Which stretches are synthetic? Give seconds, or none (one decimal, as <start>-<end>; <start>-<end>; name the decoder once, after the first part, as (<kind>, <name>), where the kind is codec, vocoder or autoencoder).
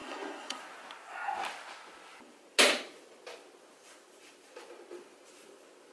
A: 0.0-0.6 (codec, SNAC)